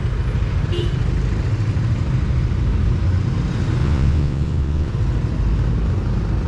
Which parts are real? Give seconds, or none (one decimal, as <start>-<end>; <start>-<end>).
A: 0.0-3.8; 4.9-6.5